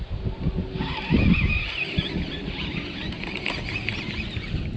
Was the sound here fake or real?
real